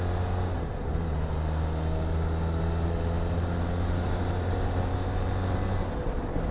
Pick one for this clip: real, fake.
real